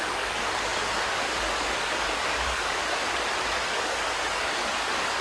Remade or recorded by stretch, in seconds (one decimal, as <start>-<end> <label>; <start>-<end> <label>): 0.0-2.8 remade; 2.8-3.4 recorded; 3.4-5.2 remade